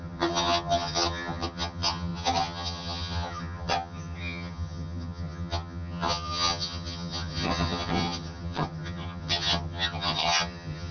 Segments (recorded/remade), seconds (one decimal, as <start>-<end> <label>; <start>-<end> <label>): 0.0-10.9 remade